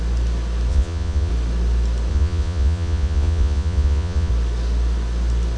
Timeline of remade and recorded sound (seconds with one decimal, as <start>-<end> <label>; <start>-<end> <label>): 0.0-0.7 recorded; 0.7-1.3 remade; 1.3-2.1 recorded; 2.1-4.3 remade; 4.3-5.6 recorded